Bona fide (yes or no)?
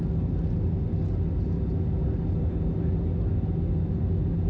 yes